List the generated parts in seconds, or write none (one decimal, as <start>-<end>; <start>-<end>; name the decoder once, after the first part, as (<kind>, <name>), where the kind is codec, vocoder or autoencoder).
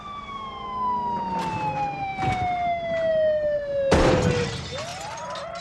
none